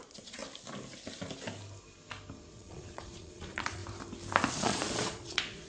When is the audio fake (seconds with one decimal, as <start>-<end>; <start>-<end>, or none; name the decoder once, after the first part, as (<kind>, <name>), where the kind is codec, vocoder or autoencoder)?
0.0-0.4 (vocoder, Vocos); 2.5-3.8; 4.5-5.7